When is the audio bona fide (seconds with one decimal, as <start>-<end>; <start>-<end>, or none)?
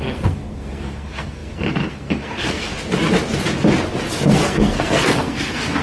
2.7-4.1